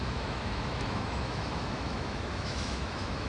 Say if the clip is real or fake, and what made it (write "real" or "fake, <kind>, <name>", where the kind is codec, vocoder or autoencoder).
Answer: fake, autoencoder, DAC-VAE